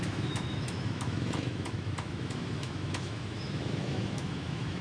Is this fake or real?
fake